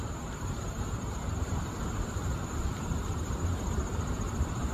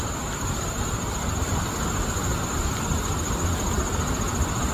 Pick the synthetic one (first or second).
first